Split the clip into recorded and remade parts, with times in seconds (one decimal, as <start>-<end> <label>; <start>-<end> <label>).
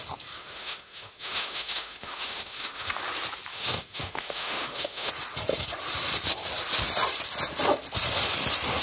0.0-0.4 recorded; 0.4-3.0 remade; 3.0-3.5 recorded; 3.5-5.1 remade; 5.1-8.8 recorded